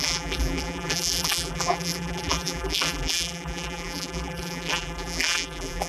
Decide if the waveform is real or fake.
fake